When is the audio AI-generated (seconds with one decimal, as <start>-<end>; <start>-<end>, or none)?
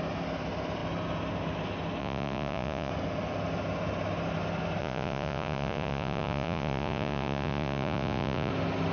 2.0-2.9; 4.8-8.5